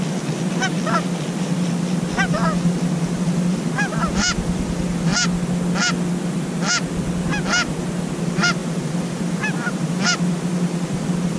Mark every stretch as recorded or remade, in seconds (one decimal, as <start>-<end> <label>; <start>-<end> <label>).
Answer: 0.0-5.1 remade; 5.1-8.2 recorded; 8.2-11.4 remade